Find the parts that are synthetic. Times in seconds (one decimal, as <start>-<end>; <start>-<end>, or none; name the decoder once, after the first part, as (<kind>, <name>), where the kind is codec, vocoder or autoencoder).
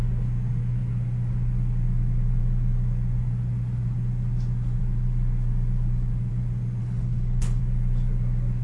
6.8-7.6 (codec, HILCodec)